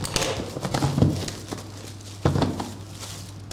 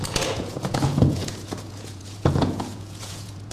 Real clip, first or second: first